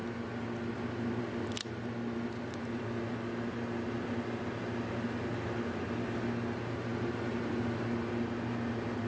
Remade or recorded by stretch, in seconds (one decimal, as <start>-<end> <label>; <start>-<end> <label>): 0.0-9.1 recorded